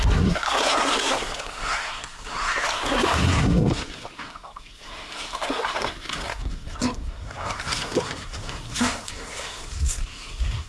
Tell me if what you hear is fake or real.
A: fake